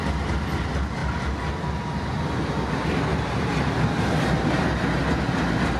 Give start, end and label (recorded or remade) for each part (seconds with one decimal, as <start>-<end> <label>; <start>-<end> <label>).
0.0-5.8 recorded

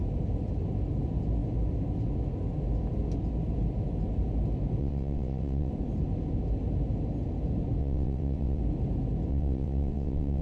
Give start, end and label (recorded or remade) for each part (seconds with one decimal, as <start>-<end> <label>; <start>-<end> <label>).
0.0-4.8 recorded; 4.8-5.7 remade; 5.7-7.8 recorded; 7.8-8.6 remade; 8.6-9.3 recorded; 9.3-10.4 remade

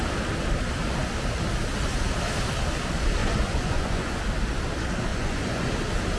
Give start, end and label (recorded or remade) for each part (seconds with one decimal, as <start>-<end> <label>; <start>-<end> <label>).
0.0-3.2 recorded; 3.2-4.2 remade; 4.2-5.1 recorded; 5.1-5.7 remade; 5.7-6.2 recorded

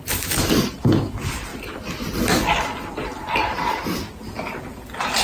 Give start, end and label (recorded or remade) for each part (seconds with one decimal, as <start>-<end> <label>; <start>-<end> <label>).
0.0-5.2 recorded

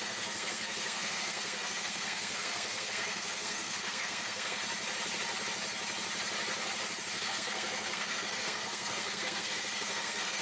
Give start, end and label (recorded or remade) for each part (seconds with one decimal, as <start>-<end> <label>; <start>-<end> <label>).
0.0-4.6 remade; 4.6-7.1 recorded; 7.1-10.4 remade

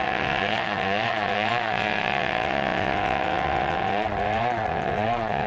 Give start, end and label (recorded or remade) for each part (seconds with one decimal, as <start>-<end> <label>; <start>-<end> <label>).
0.0-5.5 remade

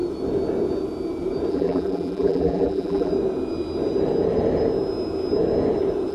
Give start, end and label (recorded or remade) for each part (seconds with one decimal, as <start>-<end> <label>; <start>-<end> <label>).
0.0-1.5 recorded; 1.5-3.1 remade; 3.1-6.1 recorded